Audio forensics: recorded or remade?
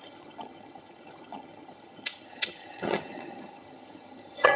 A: remade